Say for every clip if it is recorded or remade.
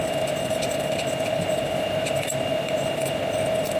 recorded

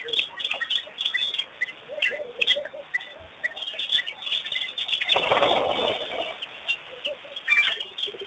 recorded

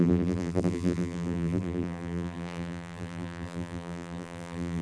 remade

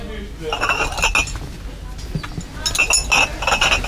recorded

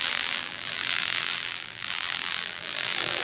remade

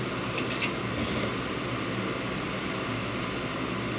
recorded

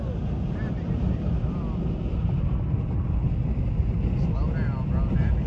recorded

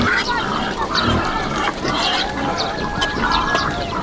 remade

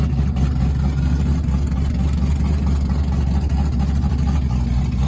recorded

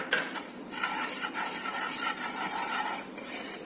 remade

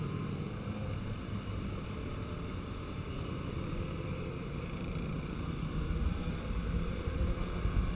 remade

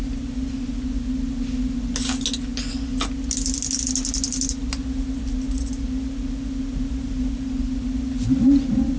recorded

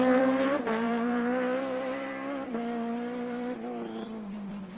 remade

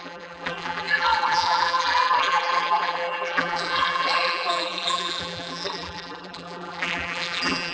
remade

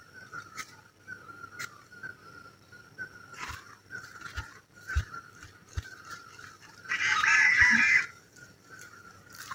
remade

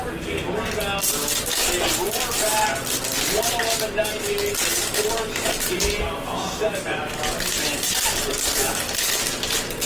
recorded